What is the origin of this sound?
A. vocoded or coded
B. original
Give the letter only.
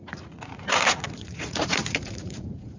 A